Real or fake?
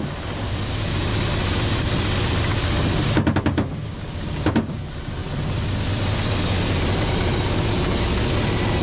real